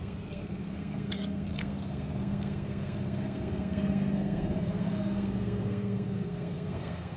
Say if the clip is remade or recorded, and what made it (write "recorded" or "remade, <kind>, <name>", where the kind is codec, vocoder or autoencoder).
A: remade, codec, SNAC